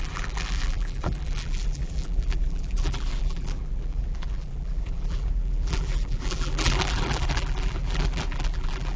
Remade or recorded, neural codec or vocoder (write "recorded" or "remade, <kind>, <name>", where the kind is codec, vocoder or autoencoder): remade, vocoder, BigVGAN v2